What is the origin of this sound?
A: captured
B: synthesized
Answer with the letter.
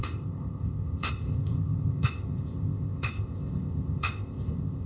B